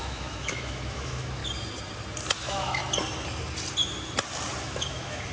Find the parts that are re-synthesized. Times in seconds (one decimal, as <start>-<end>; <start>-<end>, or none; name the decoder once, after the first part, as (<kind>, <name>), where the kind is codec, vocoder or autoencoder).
0.0-1.4 (autoencoder, DAC-VAE); 2.4-2.8; 4.6-5.3